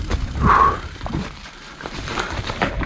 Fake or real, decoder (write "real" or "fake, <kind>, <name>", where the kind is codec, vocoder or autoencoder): fake, vocoder, BigVGAN v2